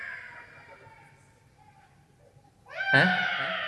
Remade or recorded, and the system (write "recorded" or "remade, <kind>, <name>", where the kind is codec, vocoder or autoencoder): recorded